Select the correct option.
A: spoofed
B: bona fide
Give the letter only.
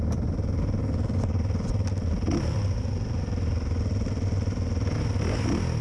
B